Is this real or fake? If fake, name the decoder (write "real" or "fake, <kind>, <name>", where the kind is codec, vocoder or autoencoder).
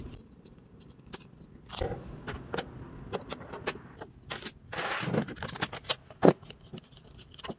real